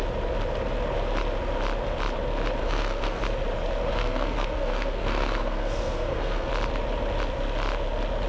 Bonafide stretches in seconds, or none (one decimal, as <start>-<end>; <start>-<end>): 0.0-2.6; 3.2-3.9; 6.5-8.3